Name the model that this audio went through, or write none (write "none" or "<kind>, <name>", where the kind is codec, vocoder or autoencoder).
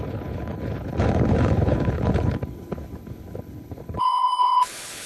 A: codec, HILCodec